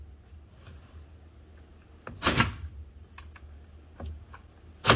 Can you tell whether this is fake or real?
real